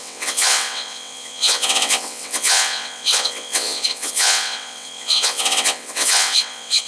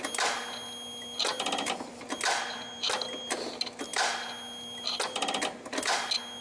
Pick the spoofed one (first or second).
first